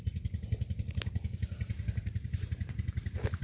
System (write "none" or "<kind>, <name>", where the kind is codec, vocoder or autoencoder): none